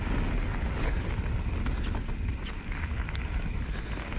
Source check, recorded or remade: recorded